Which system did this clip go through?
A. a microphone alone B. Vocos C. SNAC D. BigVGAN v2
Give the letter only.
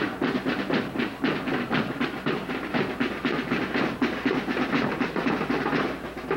A